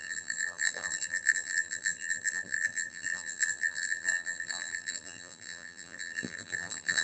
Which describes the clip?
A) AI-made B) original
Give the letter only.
A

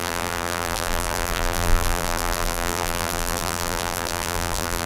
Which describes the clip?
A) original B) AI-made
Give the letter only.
B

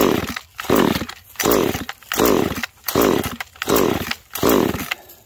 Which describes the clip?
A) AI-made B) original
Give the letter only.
B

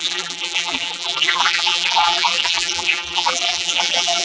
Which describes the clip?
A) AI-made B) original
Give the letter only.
A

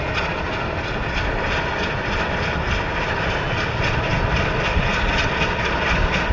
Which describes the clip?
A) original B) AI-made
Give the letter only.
A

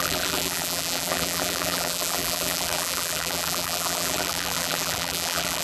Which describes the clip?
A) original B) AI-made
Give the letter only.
B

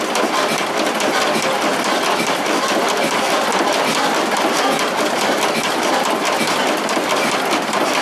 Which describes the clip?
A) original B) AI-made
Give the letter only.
A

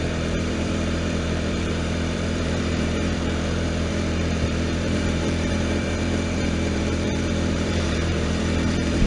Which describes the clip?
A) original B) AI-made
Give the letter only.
B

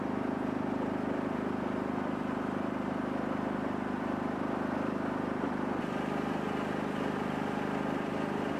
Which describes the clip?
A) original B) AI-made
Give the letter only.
B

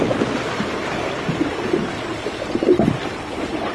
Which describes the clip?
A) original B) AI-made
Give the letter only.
A